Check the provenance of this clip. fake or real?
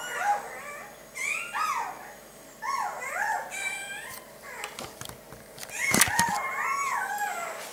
real